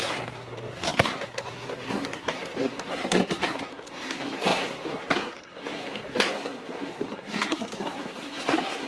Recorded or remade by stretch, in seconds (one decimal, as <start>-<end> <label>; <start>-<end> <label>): 0.0-8.9 remade